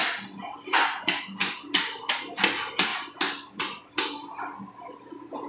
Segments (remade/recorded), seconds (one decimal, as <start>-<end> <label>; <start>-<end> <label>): 0.0-2.9 recorded; 2.9-3.9 remade; 3.9-5.5 recorded